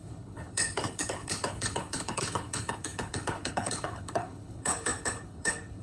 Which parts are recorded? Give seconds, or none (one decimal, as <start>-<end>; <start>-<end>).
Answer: none